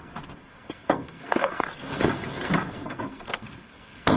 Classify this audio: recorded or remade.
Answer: remade